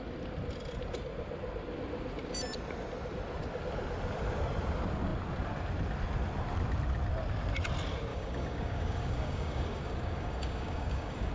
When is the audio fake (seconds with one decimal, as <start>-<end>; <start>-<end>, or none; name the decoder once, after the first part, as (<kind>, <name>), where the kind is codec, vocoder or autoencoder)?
8.1-11.3 (codec, DAC)